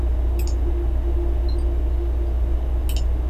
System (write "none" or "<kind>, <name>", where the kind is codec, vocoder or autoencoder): none